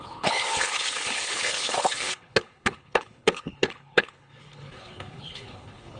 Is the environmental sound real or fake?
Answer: fake